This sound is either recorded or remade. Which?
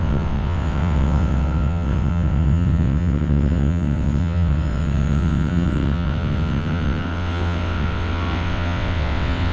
remade